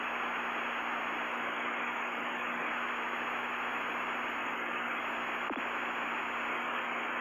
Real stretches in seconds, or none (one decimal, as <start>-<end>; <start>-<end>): 0.0-1.3; 2.7-4.4; 5.0-6.5